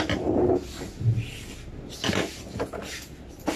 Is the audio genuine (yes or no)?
yes